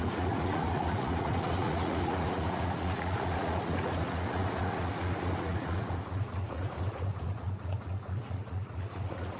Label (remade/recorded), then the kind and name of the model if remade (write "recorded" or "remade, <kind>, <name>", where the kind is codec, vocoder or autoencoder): remade, vocoder, Vocos